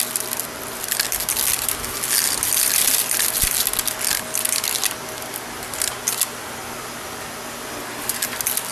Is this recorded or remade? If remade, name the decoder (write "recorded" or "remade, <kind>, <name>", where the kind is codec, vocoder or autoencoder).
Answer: recorded